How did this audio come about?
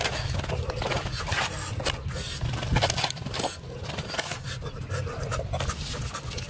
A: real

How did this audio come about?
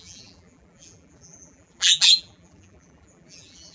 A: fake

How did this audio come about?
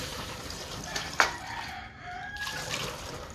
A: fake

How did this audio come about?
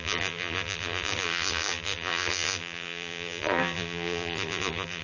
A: fake